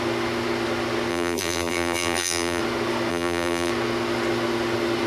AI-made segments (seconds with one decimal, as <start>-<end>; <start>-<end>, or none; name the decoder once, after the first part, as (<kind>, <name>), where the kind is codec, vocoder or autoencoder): 1.1-2.6 (vocoder, BigVGAN v2); 3.1-3.7